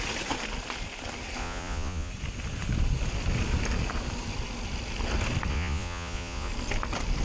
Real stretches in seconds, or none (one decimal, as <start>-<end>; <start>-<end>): 0.0-1.4; 2.1-5.5; 6.5-7.2